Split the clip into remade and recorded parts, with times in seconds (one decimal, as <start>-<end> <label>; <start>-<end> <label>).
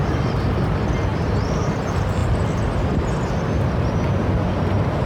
0.0-5.1 recorded